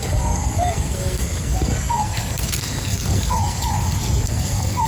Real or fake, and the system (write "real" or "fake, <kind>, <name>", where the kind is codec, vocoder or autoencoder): fake, codec, SNAC